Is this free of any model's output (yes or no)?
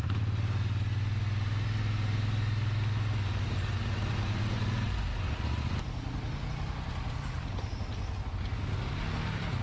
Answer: yes